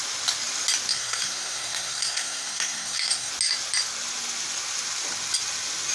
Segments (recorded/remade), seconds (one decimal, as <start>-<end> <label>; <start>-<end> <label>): 0.0-0.9 recorded; 0.9-3.3 remade; 3.3-5.9 recorded